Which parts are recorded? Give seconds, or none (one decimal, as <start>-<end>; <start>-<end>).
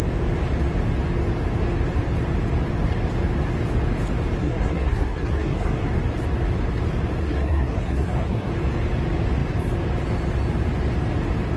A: 0.0-4.4; 5.9-7.2; 8.5-11.6